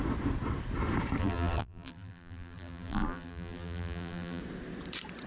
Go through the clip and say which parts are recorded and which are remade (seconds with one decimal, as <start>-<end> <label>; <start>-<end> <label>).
0.0-1.2 recorded; 1.2-4.4 remade; 4.4-5.3 recorded